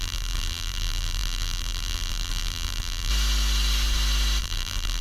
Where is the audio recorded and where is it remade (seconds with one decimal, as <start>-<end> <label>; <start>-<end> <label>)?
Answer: 0.0-3.1 remade; 3.1-4.4 recorded; 4.4-5.0 remade